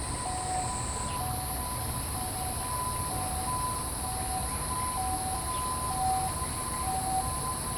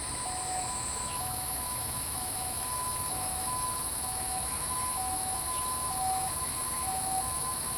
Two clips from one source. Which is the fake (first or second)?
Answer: second